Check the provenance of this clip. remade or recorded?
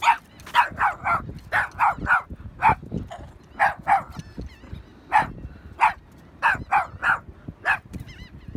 recorded